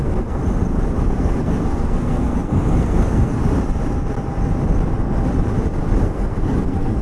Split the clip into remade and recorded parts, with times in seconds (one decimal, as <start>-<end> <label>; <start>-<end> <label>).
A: 0.0-0.4 remade; 0.4-1.0 recorded; 1.0-3.4 remade; 3.4-6.0 recorded; 6.0-7.0 remade